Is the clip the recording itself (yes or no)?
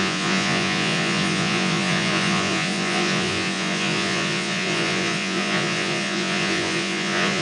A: no